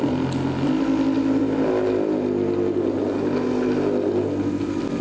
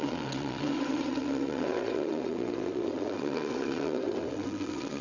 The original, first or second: first